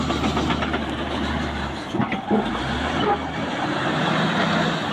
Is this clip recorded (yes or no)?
yes